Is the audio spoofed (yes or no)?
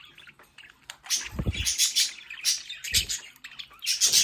no